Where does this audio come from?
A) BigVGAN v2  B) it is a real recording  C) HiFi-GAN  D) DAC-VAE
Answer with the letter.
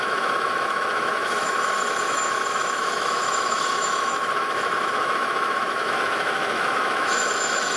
D